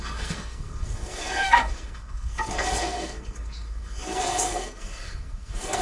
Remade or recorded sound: remade